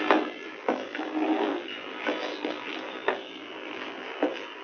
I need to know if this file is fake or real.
fake